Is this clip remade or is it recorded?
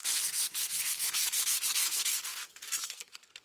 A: remade